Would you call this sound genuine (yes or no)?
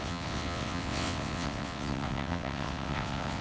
no